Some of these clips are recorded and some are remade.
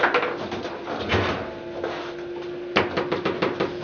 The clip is recorded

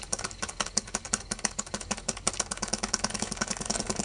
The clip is remade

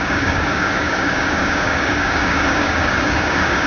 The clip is remade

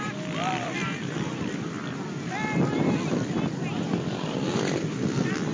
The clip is recorded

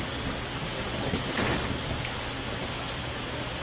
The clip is recorded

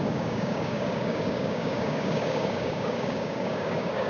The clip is remade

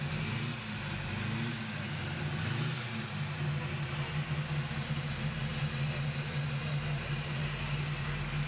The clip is recorded